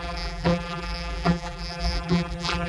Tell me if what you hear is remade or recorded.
remade